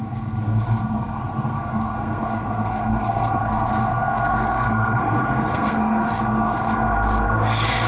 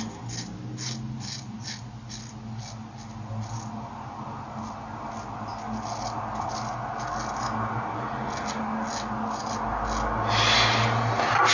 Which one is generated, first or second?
first